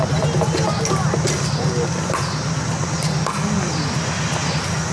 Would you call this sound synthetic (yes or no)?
no